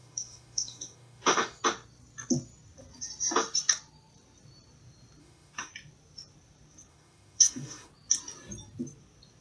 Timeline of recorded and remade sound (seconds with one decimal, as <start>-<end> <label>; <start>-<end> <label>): 0.0-1.6 remade; 1.6-5.2 recorded; 5.2-5.7 remade; 5.7-6.9 recorded; 6.9-7.9 remade; 7.9-9.4 recorded